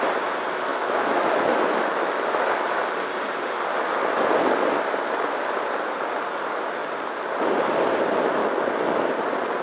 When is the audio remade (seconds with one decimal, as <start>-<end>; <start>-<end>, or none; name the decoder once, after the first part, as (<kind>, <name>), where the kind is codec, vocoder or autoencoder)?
0.7-2.4 (autoencoder, DAC-VAE); 8.4-9.0